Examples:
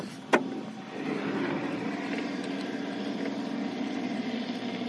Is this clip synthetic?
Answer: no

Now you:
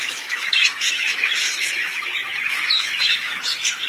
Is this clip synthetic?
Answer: yes